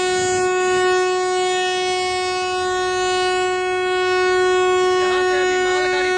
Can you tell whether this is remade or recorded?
recorded